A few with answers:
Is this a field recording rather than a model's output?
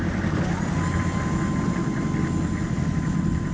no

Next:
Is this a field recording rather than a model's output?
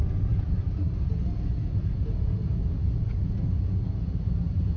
no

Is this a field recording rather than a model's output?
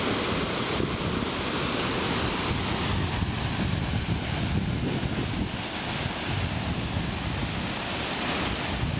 yes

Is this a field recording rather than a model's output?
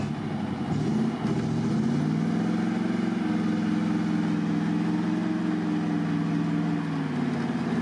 yes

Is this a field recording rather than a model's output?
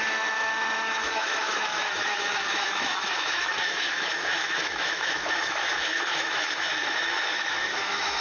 no